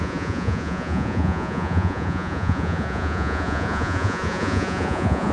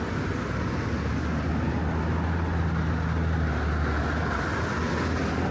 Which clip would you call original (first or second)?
second